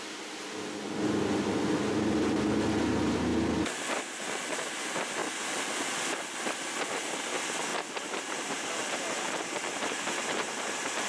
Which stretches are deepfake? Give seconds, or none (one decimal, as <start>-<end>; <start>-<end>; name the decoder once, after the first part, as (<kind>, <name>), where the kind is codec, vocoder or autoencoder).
7.7-10.7 (vocoder, BigVGAN v2)